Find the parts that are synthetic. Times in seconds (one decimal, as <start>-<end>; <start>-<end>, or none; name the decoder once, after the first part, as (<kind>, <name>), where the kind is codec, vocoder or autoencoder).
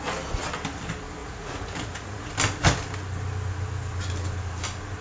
1.2-2.3 (vocoder, Vocos)